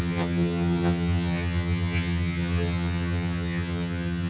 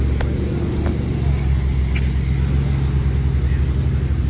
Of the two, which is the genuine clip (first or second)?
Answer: second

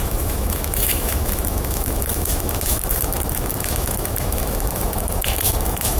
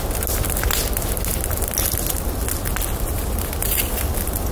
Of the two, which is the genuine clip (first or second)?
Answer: second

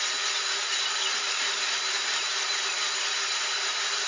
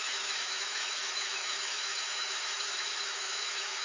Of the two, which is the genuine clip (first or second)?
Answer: first